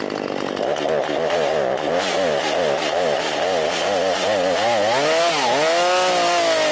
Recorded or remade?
recorded